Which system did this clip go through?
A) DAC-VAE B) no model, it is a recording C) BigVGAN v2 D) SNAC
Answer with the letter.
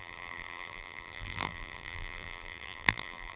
C